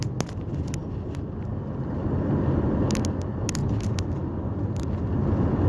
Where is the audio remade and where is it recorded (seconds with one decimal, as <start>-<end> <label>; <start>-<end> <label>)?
0.0-3.6 recorded; 3.6-4.9 remade; 4.9-5.7 recorded